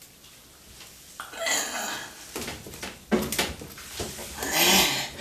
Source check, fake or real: real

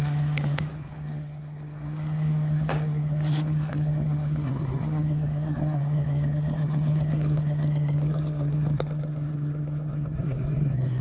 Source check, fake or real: fake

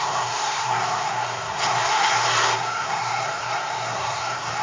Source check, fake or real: fake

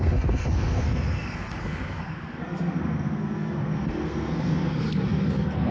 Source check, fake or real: fake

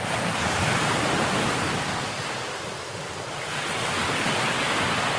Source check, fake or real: real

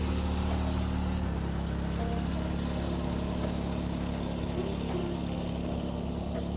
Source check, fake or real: real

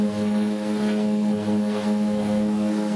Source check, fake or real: fake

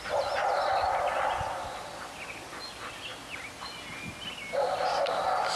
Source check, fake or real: real